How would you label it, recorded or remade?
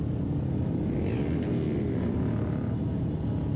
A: recorded